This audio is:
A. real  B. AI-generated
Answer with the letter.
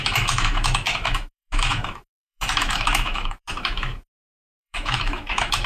B